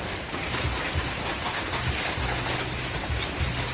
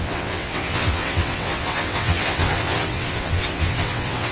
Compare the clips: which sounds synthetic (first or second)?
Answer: second